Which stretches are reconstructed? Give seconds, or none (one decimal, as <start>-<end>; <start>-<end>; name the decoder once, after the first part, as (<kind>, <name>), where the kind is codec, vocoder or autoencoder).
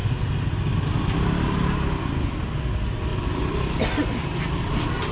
none